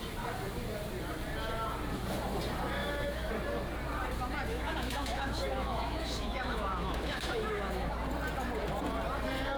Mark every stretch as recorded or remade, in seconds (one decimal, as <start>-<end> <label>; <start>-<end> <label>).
0.0-2.8 recorded; 2.8-3.3 remade; 3.3-4.5 recorded; 4.5-7.9 remade; 7.9-9.6 recorded